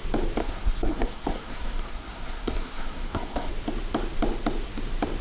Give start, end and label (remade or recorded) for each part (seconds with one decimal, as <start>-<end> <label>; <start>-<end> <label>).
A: 0.0-0.4 recorded; 0.4-3.5 remade; 3.5-5.2 recorded